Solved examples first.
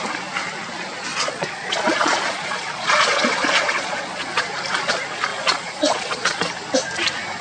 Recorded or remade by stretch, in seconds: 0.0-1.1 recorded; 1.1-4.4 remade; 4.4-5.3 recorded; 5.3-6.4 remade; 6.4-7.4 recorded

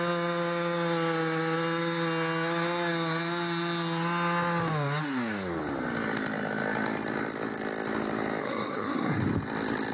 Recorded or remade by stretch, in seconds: 0.0-8.4 recorded; 8.4-9.2 remade; 9.2-9.9 recorded